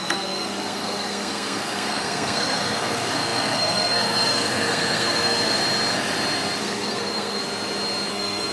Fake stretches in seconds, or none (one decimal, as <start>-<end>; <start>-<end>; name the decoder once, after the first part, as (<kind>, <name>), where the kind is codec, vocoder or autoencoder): 0.0-5.6 (codec, SNAC); 6.6-7.4; 8.1-8.5

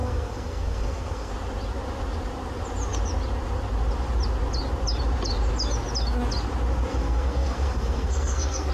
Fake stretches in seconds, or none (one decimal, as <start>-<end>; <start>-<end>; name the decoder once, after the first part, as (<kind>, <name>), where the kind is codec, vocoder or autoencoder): 0.0-1.3 (codec, SNAC); 6.9-8.7

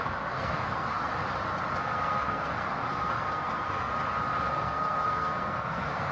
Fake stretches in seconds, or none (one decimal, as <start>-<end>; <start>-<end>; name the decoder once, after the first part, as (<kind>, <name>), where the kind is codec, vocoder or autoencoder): 0.0-1.1 (codec, SNAC); 1.8-3.9; 4.5-6.1

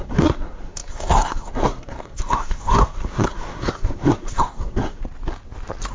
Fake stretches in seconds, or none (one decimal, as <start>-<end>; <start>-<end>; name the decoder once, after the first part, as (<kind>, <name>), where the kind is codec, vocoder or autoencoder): 0.0-5.0 (codec, SNAC)

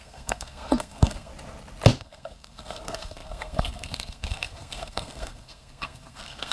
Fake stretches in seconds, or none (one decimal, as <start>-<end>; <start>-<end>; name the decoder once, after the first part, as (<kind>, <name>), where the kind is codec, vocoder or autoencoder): 0.0-1.3 (codec, SNAC); 2.0-6.5

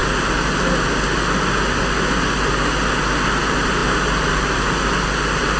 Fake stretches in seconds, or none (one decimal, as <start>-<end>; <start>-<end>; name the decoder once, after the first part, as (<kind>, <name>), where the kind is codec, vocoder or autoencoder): none